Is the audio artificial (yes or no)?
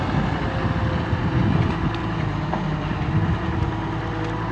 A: no